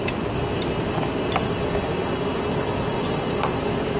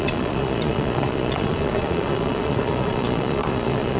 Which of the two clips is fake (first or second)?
second